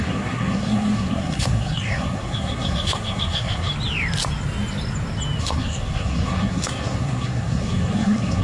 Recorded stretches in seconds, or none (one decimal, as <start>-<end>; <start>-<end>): 3.7-5.4